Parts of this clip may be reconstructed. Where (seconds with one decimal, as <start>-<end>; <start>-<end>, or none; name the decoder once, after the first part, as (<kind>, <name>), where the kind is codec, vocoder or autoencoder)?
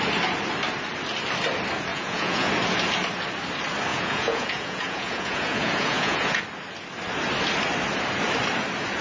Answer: 1.9-2.5 (vocoder, Vocos); 3.9-6.4